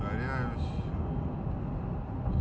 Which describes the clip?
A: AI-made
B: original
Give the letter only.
B